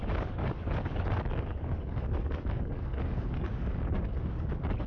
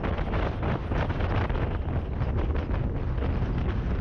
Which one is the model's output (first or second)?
first